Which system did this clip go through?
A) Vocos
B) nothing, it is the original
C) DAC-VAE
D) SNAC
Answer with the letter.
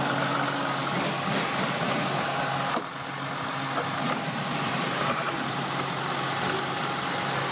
B